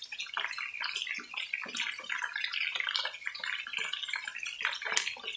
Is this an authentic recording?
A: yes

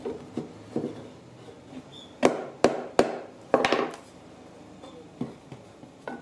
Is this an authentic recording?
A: yes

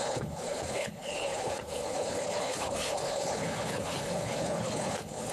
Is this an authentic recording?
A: no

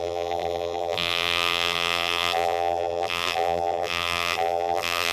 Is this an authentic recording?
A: no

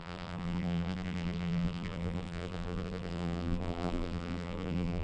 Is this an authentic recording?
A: no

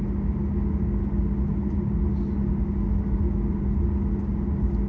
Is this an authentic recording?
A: yes